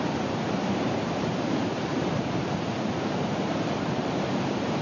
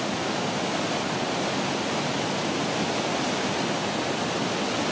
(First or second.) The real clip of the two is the second